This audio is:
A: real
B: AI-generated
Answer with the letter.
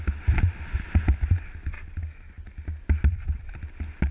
A